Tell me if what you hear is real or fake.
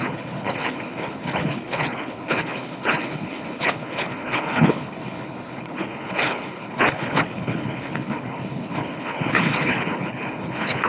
fake